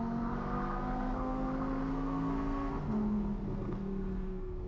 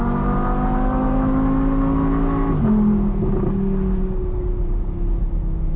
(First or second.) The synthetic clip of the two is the first